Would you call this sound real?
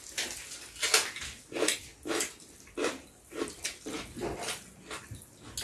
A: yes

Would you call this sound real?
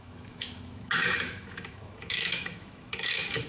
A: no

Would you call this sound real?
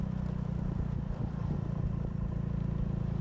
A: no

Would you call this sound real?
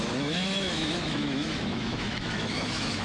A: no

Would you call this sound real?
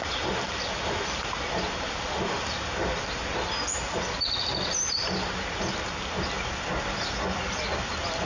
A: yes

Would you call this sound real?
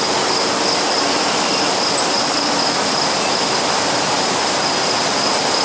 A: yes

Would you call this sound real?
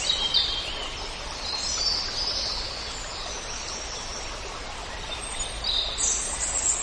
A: yes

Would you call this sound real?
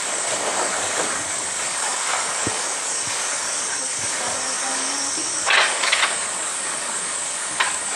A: no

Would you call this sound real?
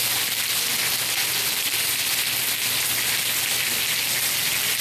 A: yes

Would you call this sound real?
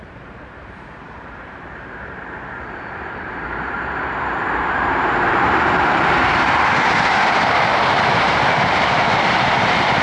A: no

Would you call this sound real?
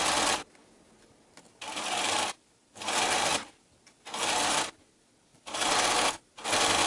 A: yes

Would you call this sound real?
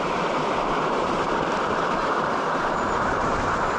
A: no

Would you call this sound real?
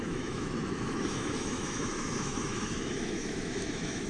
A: no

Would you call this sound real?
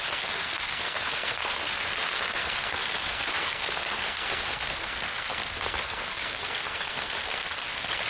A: no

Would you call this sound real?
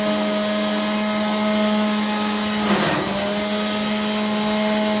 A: yes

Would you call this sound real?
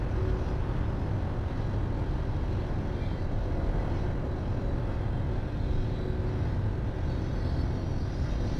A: yes